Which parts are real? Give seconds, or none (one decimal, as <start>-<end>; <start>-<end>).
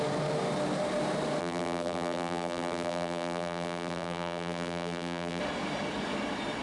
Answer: 0.0-1.4; 5.4-6.6